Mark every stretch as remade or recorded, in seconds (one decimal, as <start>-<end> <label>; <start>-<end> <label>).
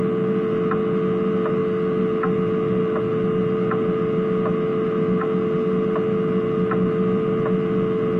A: 0.0-8.2 recorded